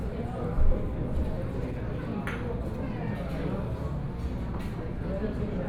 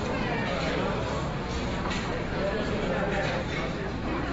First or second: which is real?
first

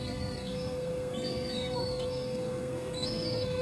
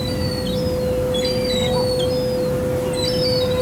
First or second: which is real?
second